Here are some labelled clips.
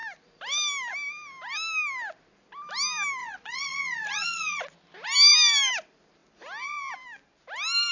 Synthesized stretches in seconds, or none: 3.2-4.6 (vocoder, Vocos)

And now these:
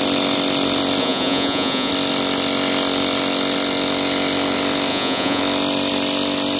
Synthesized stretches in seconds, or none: 1.0-1.9 (vocoder, Vocos); 4.9-5.4

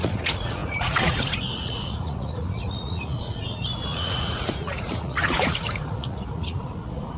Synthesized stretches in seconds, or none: 0.0-7.2 (vocoder, Vocos)

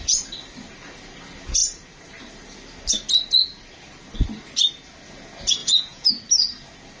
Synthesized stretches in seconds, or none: 5.6-6.1 (vocoder, Vocos)

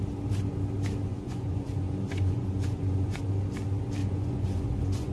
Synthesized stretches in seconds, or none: 1.1-3.2 (vocoder, Vocos); 4.0-5.1

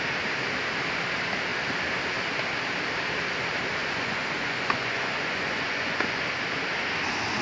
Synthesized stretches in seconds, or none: 3.8-6.2 (vocoder, Vocos)